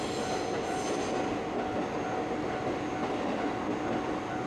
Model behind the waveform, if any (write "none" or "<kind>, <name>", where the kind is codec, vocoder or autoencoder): none